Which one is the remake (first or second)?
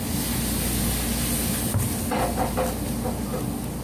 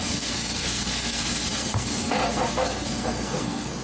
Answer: second